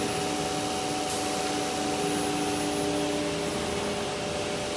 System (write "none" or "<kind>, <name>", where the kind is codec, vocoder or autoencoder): none